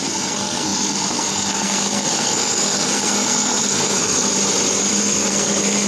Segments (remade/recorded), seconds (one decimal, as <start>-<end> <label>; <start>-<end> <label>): 0.0-4.3 remade; 4.3-4.8 recorded; 4.8-5.9 remade